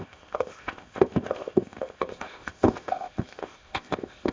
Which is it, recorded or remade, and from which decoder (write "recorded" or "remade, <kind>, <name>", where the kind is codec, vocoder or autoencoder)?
remade, codec, ZipCodec